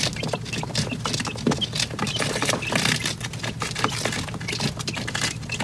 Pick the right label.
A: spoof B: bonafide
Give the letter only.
B